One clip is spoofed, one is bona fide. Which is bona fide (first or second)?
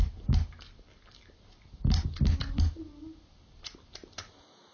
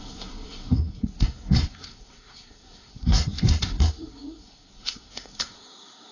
first